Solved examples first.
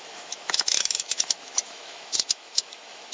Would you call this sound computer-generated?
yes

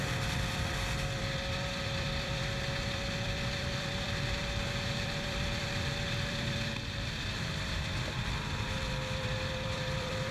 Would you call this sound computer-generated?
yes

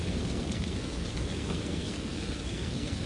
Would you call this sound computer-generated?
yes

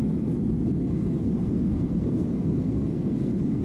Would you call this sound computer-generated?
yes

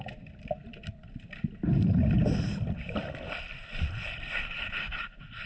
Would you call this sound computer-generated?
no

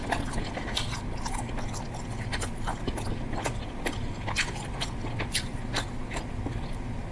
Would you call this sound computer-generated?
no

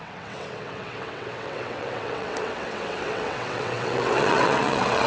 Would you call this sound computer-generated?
yes